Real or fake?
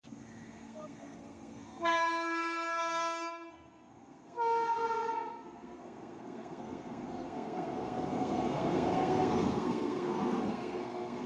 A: fake